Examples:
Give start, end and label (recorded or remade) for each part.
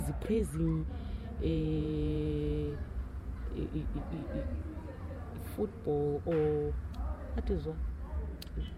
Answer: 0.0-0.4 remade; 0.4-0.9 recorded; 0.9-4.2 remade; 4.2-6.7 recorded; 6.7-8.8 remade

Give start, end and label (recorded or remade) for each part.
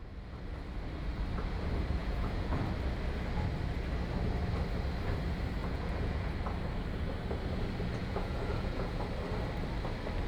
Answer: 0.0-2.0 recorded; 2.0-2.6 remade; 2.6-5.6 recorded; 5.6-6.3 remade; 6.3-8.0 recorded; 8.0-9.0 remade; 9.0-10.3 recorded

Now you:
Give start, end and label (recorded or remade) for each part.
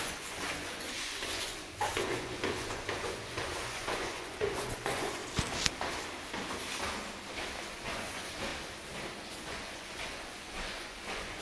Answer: 0.0-5.2 remade; 5.2-7.6 recorded; 7.6-8.5 remade; 8.5-9.2 recorded; 9.2-11.4 remade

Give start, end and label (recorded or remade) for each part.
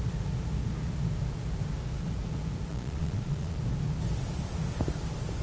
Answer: 0.0-2.7 recorded; 2.7-3.6 remade; 3.6-5.4 recorded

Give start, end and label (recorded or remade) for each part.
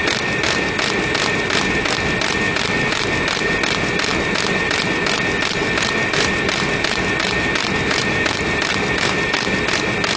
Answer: 0.0-10.2 recorded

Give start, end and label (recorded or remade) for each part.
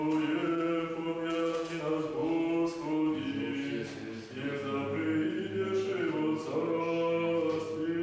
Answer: 0.0-0.4 recorded; 0.4-1.8 remade; 1.8-8.0 recorded